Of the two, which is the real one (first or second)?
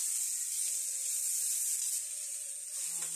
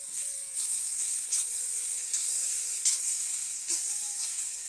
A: first